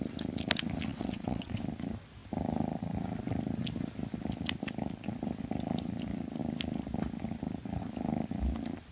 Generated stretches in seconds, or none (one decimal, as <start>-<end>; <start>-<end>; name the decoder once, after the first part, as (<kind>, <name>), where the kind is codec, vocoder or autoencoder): 0.9-1.6 (vocoder, WaveNeXt)